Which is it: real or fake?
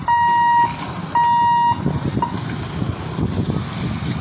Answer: real